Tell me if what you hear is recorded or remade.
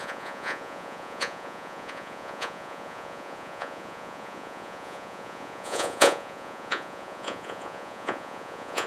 remade